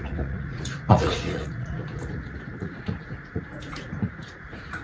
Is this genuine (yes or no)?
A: no